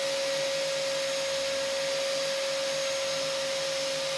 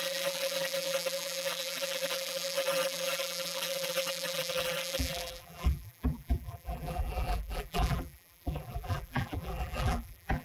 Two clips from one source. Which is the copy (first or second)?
second